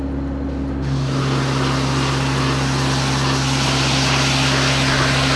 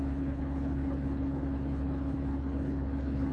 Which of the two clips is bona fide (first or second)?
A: first